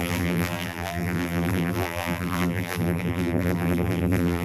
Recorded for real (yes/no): no